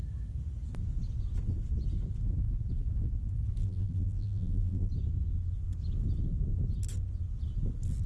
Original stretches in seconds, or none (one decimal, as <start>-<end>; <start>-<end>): 0.0-3.6; 4.9-8.1